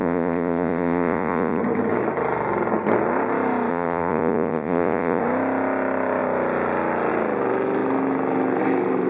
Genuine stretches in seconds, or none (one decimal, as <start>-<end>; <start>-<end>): 1.6-3.7; 5.2-9.1

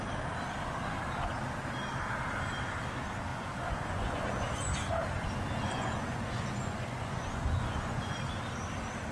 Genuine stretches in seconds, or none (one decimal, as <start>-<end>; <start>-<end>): 0.0-3.3; 4.9-5.6; 8.2-9.1

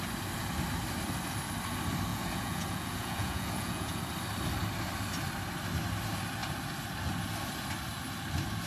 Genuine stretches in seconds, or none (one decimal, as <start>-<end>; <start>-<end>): 0.0-2.1; 4.0-8.7

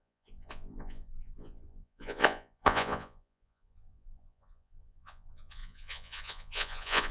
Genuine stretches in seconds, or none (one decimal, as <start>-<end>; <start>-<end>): none

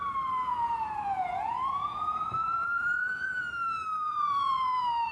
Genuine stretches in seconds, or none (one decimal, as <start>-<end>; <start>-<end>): 0.0-0.4; 3.5-4.0

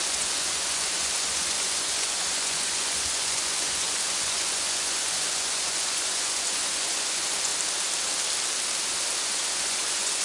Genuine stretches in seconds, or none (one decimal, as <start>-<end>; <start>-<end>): 7.5-9.2